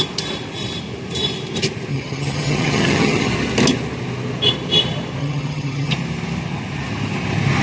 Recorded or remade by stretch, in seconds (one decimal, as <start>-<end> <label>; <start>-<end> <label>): 0.0-1.9 recorded; 1.9-3.3 remade; 3.3-5.2 recorded; 5.2-5.9 remade; 5.9-7.6 recorded